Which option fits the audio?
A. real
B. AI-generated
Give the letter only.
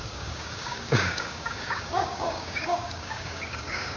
B